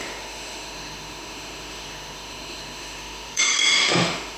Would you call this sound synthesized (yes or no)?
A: yes